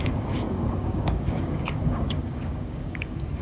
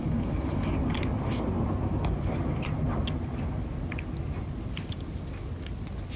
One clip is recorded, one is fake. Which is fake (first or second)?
first